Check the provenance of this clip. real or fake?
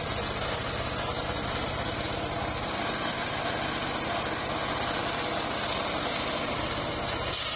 real